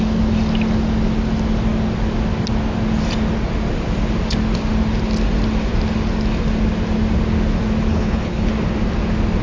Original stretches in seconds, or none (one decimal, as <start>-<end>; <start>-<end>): 0.0-7.9; 8.5-9.4